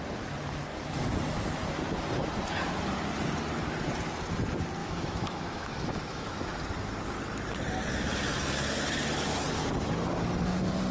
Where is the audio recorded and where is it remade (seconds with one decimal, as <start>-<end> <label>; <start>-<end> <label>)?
0.0-4.8 recorded; 4.8-6.5 remade; 6.5-10.9 recorded